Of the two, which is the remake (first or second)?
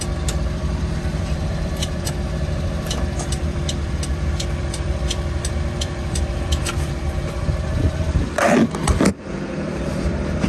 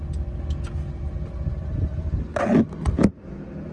first